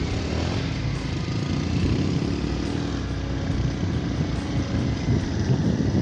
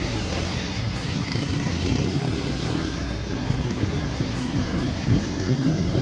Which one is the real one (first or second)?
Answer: first